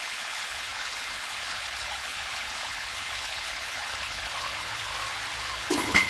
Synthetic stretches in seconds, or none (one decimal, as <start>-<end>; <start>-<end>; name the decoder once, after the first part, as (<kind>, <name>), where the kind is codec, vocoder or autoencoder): 0.0-4.9 (codec, HILCodec); 5.4-6.1